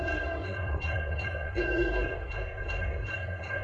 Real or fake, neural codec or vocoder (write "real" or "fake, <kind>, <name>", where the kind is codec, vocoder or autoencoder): fake, codec, SNAC